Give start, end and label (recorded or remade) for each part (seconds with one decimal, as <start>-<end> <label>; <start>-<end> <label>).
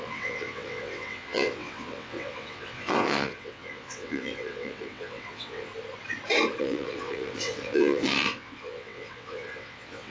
0.0-5.7 remade; 5.7-6.6 recorded; 6.6-10.1 remade